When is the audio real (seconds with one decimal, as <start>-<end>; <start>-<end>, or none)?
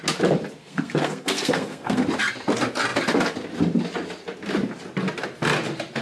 0.0-0.6; 2.0-6.0